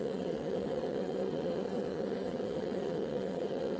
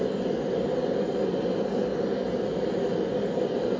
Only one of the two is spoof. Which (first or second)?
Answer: first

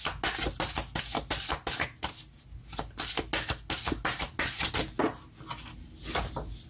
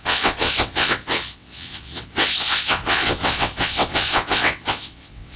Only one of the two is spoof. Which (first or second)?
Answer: second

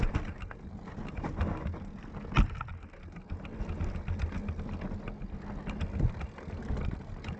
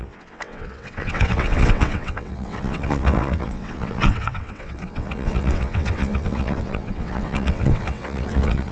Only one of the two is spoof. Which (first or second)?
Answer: second